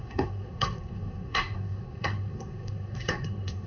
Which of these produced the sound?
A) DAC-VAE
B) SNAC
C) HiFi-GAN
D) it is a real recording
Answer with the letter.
B